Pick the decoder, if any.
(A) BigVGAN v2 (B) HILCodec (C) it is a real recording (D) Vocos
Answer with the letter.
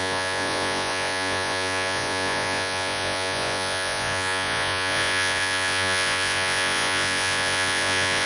D